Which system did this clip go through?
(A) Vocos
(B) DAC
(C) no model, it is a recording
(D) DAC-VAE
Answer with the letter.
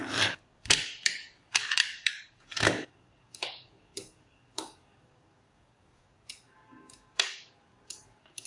B